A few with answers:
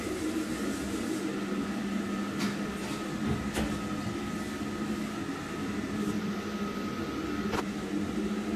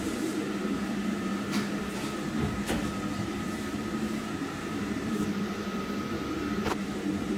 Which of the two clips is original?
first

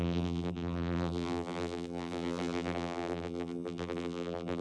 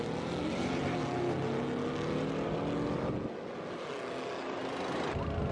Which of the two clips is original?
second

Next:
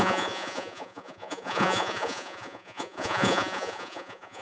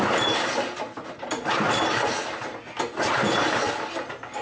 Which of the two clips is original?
second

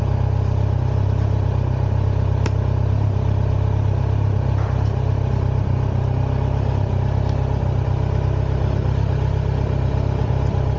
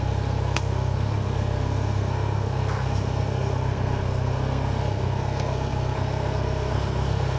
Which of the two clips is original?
first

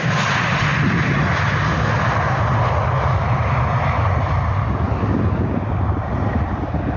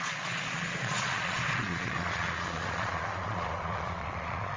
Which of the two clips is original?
first